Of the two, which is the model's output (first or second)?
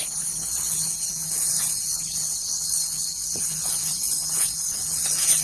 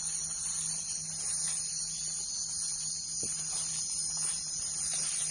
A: first